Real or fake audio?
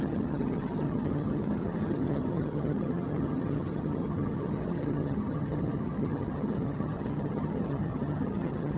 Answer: fake